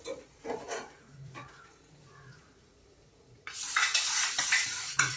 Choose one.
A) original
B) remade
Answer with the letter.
B